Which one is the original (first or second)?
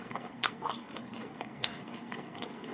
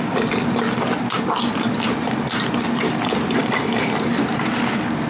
second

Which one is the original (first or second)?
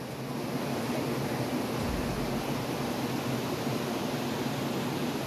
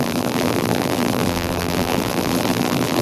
first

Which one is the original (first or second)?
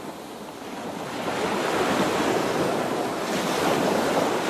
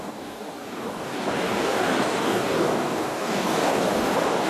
first